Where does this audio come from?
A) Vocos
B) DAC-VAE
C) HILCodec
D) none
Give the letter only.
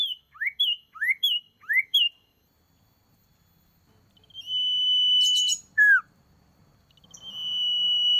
D